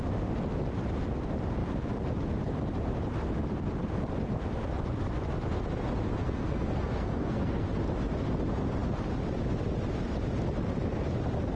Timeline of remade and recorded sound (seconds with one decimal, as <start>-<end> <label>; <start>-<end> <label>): 0.0-6.2 recorded; 6.2-7.7 remade; 7.7-11.6 recorded